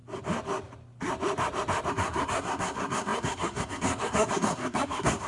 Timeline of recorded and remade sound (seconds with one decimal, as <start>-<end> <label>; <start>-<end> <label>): 0.0-1.9 recorded; 1.9-5.3 remade